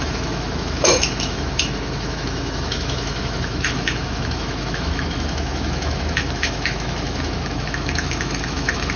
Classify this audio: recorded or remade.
remade